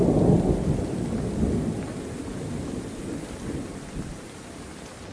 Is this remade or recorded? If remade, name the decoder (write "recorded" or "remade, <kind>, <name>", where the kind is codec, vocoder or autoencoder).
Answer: recorded